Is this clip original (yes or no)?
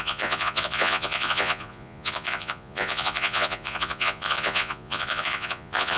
no